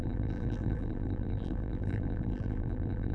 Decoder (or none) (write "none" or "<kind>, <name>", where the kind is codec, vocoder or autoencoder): vocoder, BigVGAN v2